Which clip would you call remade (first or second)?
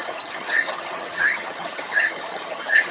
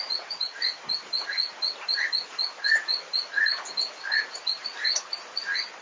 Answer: first